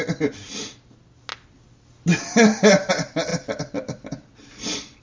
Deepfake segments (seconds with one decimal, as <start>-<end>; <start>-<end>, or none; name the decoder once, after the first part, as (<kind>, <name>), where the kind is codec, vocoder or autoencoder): 3.3-5.0 (vocoder, BigVGAN v2)